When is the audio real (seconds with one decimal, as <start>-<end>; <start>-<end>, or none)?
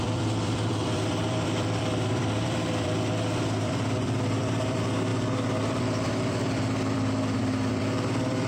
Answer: 5.1-5.6